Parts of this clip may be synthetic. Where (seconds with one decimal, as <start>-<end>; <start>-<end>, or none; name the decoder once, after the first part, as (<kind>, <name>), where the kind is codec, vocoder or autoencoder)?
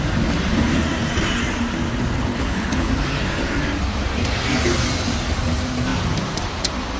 2.3-2.9 (codec, HILCodec)